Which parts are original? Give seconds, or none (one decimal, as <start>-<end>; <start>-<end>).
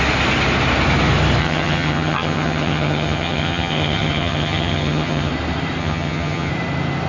0.0-1.4; 5.3-5.8; 6.5-7.1